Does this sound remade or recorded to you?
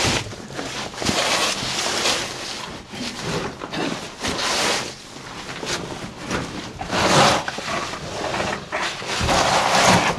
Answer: recorded